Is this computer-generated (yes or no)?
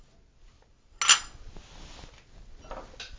no